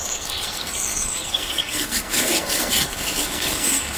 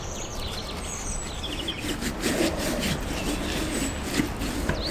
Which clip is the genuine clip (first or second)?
second